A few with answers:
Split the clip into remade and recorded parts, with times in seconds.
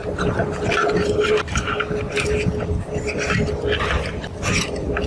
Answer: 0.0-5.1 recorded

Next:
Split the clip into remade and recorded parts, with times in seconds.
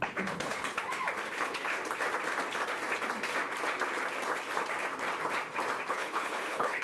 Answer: 0.0-0.8 remade; 0.8-1.3 recorded; 1.3-1.8 remade; 1.8-5.9 recorded; 5.9-6.8 remade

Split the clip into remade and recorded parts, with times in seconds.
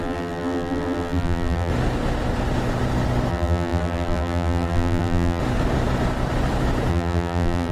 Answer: 0.0-1.7 remade; 1.7-3.3 recorded; 3.3-5.4 remade; 5.4-6.9 recorded; 6.9-7.7 remade